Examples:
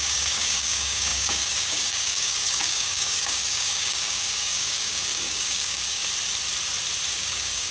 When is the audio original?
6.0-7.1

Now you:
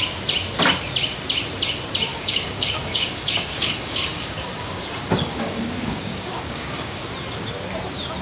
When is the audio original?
0.0-2.1; 7.0-8.2

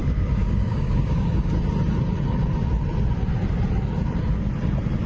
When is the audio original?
1.6-5.1